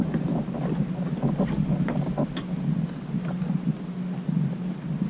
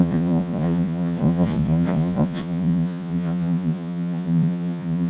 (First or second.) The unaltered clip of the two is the first